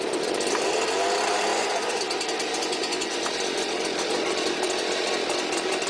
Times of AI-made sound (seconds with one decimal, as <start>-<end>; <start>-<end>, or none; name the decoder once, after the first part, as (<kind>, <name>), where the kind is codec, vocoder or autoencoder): 1.5-2.0 (vocoder, Vocos); 2.5-3.2